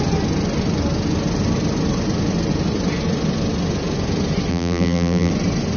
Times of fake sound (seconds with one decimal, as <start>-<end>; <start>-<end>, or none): 4.5-5.3